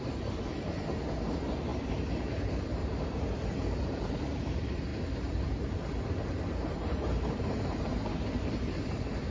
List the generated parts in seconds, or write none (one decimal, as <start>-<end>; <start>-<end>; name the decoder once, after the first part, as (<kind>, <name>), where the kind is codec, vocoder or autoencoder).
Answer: 0.0-2.7 (vocoder, BigVGAN v2); 3.4-9.3

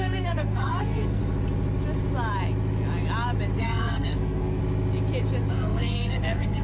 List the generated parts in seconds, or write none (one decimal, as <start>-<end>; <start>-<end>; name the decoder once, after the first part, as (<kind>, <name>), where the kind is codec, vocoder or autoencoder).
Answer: 0.0-1.2 (codec, SNAC); 3.6-4.6; 5.5-6.6

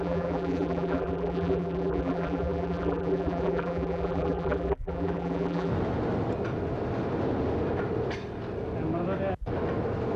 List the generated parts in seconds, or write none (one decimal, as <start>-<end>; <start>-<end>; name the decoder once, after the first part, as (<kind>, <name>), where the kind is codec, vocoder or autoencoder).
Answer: 0.0-5.7 (vocoder, BigVGAN v2)

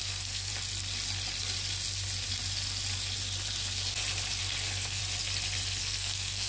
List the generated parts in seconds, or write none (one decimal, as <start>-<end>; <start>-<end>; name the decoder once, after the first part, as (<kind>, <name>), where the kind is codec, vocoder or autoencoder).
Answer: 0.0-0.5 (codec, SNAC); 4.4-5.0; 5.8-6.5

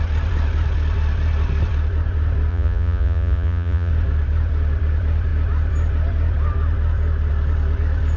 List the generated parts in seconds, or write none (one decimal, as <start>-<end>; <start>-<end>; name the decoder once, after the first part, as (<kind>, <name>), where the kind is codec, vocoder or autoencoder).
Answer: 2.5-3.9 (vocoder, Vocos)

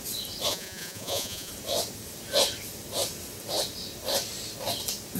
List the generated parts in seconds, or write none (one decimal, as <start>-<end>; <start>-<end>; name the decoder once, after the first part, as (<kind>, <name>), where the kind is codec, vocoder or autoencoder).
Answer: 0.5-1.5 (vocoder, Vocos)

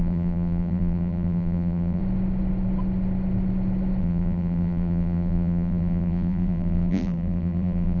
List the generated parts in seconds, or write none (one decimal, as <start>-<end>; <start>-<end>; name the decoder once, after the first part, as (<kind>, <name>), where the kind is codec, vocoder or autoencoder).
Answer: 0.0-2.0 (vocoder, BigVGAN v2); 4.0-8.0

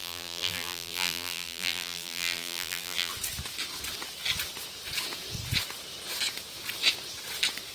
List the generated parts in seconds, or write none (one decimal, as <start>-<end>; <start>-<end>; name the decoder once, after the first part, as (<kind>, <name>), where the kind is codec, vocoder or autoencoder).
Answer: 0.0-3.1 (vocoder, BigVGAN v2)